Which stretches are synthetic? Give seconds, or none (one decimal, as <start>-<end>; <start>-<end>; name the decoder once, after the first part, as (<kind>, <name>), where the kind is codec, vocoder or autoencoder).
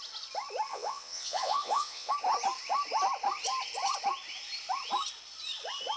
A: 0.7-2.1 (vocoder, WaveNeXt)